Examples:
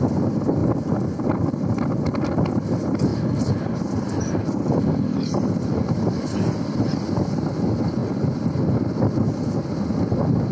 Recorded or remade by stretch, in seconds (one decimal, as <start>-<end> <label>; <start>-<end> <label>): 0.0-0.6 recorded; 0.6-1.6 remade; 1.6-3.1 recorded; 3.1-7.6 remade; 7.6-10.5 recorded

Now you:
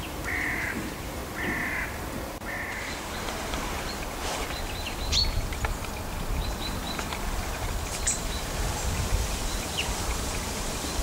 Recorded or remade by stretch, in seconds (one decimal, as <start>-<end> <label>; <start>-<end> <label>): 0.0-1.2 remade; 1.2-2.7 recorded; 2.7-5.2 remade; 5.2-6.6 recorded; 6.6-11.0 remade

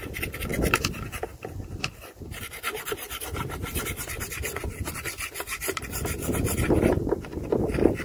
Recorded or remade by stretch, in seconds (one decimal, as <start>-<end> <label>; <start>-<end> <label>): 0.0-0.5 recorded; 0.5-2.4 remade; 2.4-3.6 recorded; 3.6-6.6 remade; 6.6-8.0 recorded